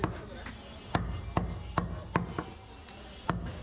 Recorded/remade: recorded